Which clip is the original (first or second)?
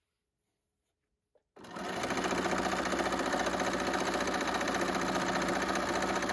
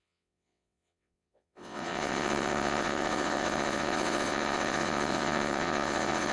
first